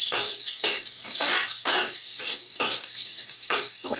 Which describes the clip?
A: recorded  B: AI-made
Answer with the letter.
B